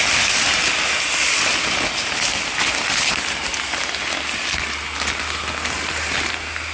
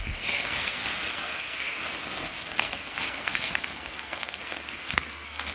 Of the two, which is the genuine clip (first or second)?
first